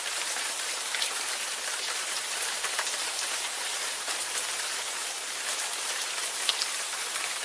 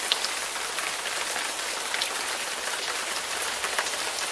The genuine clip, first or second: second